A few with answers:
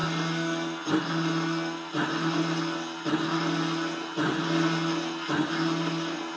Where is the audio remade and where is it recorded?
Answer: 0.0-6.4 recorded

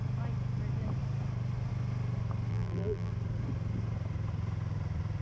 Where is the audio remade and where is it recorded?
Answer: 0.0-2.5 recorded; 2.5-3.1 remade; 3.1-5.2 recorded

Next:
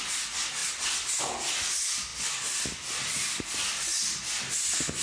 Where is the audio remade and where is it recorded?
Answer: 0.0-5.0 recorded